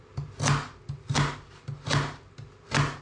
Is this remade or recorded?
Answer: recorded